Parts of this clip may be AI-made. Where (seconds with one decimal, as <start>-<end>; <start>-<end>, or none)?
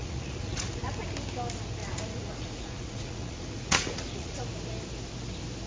0.0-0.9; 1.8-4.4